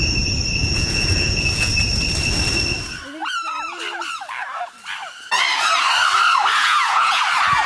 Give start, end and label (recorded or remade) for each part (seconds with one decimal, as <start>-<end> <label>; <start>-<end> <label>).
0.0-0.6 recorded; 0.6-1.7 remade; 1.7-6.6 recorded; 6.6-7.2 remade; 7.2-7.7 recorded